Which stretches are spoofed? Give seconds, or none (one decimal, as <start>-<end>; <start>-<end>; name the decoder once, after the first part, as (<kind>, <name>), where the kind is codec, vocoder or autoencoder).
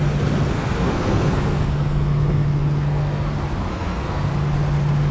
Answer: 0.5-3.3 (codec, SNAC); 3.7-4.3